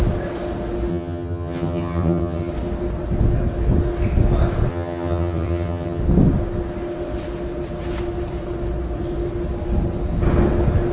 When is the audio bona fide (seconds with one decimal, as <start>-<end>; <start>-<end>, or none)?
0.0-0.9; 2.5-4.7; 6.0-10.9